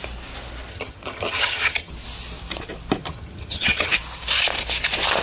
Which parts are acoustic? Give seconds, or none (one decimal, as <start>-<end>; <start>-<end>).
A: 0.0-0.7; 1.9-3.0; 3.9-5.2